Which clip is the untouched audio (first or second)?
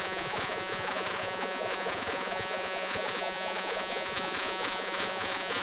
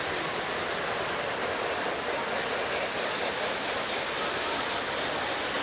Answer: second